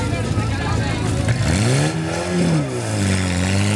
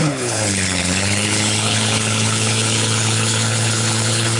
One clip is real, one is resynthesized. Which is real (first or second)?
first